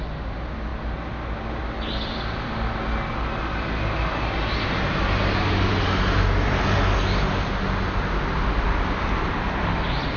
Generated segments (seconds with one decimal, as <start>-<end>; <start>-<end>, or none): none